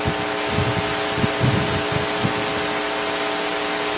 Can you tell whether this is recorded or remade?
recorded